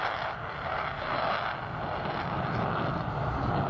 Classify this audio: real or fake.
real